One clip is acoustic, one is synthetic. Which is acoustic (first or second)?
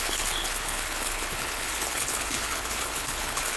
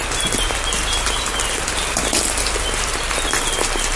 second